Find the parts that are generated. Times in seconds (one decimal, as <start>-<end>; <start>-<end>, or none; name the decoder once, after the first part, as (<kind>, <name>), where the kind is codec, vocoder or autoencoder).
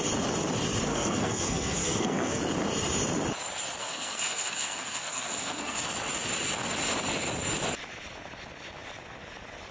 0.9-2.4 (codec, SNAC); 3.8-5.8